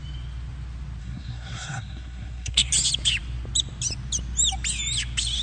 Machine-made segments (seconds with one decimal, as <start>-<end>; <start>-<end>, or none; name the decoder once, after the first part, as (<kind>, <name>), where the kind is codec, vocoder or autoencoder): 1.0-2.7 (codec, SNAC)